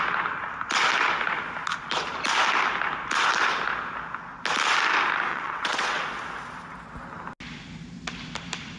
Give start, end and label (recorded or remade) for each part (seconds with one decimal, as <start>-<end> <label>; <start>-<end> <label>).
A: 0.0-5.3 recorded; 5.3-6.0 remade; 6.0-8.8 recorded